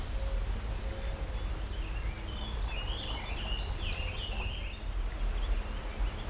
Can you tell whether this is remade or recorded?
recorded